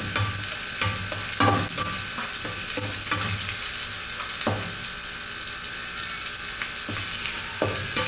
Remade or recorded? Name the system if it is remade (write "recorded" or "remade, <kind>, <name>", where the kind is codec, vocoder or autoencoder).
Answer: recorded